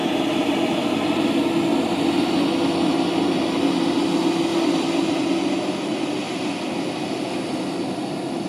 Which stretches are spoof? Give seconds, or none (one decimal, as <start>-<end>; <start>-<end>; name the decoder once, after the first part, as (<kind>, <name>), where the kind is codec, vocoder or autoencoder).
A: 4.5-5.2 (vocoder, BigVGAN v2)